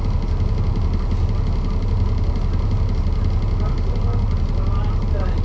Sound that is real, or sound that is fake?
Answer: real